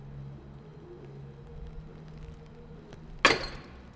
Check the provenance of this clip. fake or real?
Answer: real